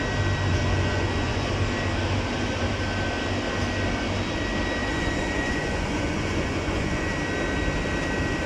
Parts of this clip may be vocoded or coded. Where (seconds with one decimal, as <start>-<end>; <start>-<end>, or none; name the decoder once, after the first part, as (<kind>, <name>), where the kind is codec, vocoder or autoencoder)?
0.5-1.5 (vocoder, Vocos); 4.8-7.1